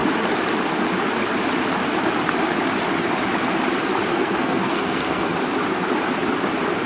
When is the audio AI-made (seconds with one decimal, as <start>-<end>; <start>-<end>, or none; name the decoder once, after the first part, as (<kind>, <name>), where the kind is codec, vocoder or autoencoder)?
4.1-5.3 (codec, SNAC)